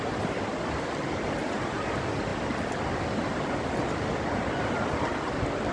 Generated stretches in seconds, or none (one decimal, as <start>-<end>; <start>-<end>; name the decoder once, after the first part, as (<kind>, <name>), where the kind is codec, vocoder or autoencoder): none

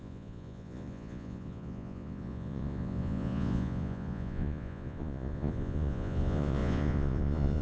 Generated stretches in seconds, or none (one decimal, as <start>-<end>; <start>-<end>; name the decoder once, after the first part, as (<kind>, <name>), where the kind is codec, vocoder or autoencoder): 0.0-7.6 (vocoder, Vocos)

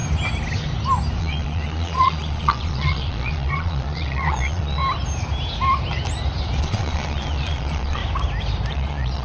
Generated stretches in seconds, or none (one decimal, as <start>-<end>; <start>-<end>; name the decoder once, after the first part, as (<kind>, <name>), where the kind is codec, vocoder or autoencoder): 1.2-4.8 (vocoder, Vocos); 6.6-8.0; 8.7-9.2

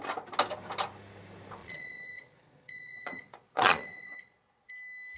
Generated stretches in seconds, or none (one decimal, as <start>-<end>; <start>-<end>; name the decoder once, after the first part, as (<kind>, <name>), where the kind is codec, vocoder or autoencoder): 1.6-4.7 (vocoder, Vocos)

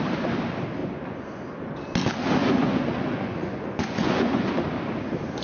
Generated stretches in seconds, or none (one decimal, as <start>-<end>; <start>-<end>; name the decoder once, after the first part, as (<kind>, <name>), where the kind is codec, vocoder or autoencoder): 0.8-1.4 (vocoder, Vocos); 2.4-4.5

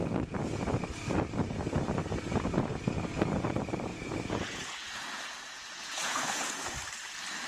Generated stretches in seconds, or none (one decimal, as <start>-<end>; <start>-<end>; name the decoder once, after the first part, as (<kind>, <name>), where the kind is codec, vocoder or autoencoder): 3.9-6.6 (vocoder, Vocos)

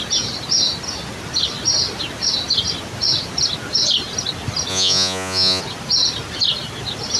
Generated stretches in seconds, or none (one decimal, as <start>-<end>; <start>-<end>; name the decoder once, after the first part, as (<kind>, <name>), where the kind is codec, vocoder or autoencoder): 4.7-5.6 (vocoder, Vocos)